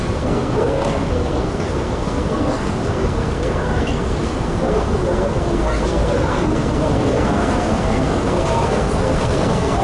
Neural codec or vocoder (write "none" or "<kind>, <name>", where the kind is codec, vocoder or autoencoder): codec, SNAC